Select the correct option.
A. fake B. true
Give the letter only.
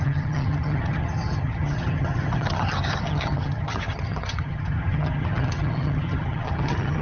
A